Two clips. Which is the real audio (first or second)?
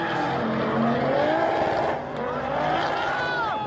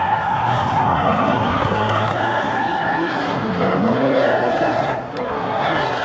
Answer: first